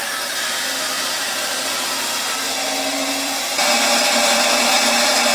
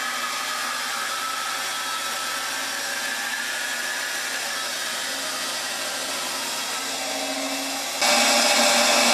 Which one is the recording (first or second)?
second